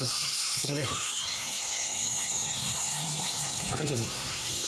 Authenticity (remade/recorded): remade